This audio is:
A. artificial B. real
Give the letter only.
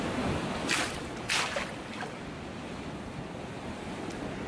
B